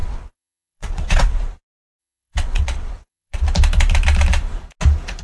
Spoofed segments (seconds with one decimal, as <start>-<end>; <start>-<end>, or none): 0.0-1.4; 2.0-3.4